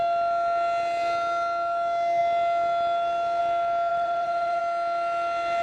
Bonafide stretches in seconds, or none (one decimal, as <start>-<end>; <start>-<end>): 0.0-3.9; 4.6-5.6